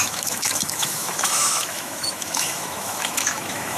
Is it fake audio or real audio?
fake